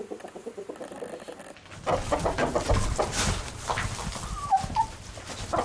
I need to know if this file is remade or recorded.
recorded